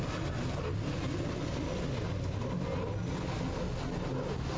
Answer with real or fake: real